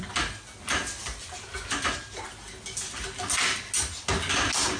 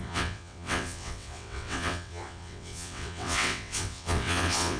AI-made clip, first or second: second